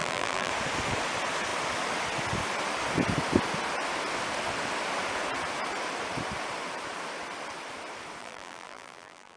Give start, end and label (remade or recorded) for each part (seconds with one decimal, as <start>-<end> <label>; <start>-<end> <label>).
0.0-0.5 remade; 0.5-8.2 recorded; 8.2-9.4 remade